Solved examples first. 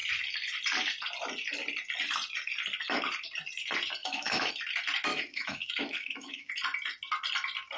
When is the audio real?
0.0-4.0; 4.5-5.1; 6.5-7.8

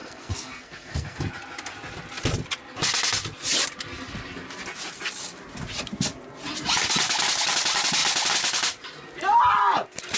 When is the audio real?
1.3-10.2

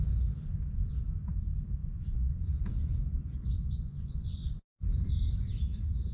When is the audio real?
0.0-1.8; 4.5-6.1

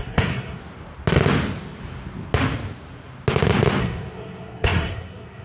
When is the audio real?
0.6-3.8

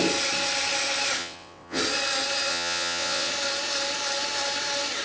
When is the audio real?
0.0-1.2; 1.8-2.5; 3.3-5.0